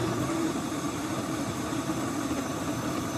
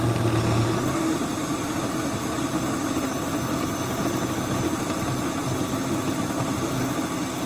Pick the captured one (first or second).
second